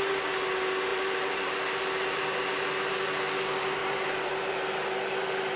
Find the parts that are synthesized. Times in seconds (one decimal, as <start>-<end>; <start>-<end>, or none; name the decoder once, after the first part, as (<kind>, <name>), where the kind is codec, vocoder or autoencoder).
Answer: 0.9-1.5 (vocoder, BigVGAN v2); 3.8-4.3